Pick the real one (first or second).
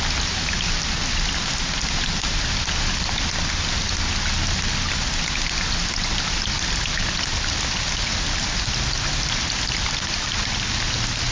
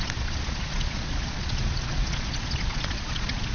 first